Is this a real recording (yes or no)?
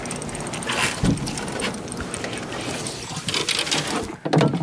yes